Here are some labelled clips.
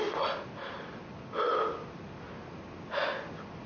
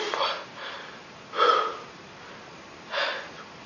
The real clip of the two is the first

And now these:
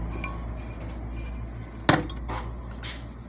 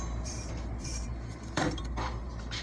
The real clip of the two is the first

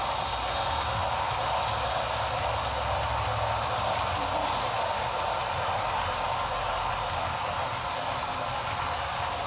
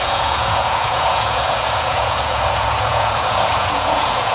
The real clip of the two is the first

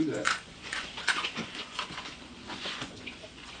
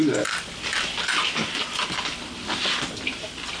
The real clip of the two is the second